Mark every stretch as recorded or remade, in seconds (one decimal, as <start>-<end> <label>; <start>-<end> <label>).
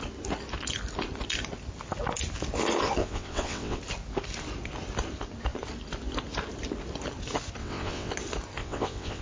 0.0-3.0 recorded; 3.0-3.8 remade; 3.8-7.6 recorded; 7.6-8.1 remade; 8.1-8.6 recorded; 8.6-9.2 remade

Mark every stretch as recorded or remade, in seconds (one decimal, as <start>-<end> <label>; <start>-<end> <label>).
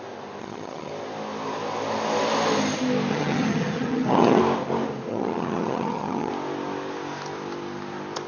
0.0-0.4 recorded; 0.4-0.9 remade; 0.9-3.1 recorded; 3.1-4.4 remade; 4.4-5.1 recorded; 5.1-6.3 remade; 6.3-8.3 recorded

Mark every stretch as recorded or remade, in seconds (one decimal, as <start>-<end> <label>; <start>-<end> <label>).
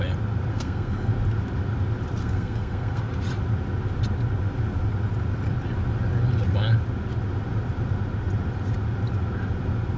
0.0-0.5 recorded; 0.5-1.1 remade; 1.1-2.2 recorded; 2.2-3.0 remade; 3.0-10.0 recorded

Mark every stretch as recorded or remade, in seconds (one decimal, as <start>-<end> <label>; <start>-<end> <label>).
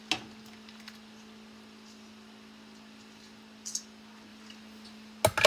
0.0-5.5 recorded